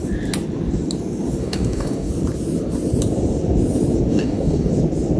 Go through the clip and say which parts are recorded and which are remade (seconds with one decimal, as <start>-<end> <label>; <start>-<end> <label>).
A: 0.0-1.4 recorded; 1.4-2.1 remade; 2.1-4.1 recorded; 4.1-4.7 remade; 4.7-5.2 recorded